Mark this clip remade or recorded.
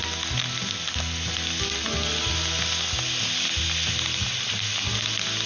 recorded